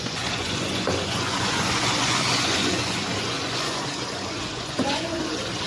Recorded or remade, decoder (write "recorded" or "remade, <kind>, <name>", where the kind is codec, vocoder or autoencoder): remade, vocoder, Vocos